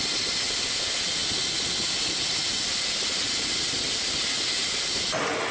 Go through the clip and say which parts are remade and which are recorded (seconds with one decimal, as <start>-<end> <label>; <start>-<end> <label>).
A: 0.0-5.5 recorded